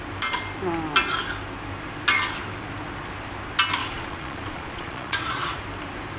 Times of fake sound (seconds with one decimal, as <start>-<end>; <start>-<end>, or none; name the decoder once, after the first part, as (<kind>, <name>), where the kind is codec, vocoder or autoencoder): 3.8-5.6 (vocoder, Vocos)